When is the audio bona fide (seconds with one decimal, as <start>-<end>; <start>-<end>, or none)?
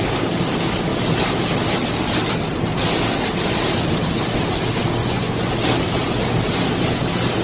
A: 0.0-5.0; 5.5-7.4